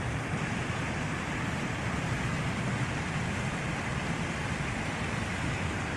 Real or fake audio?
real